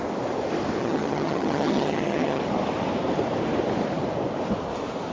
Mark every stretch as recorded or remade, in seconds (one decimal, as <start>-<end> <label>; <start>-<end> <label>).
0.0-0.8 recorded; 0.8-2.4 remade; 2.4-5.1 recorded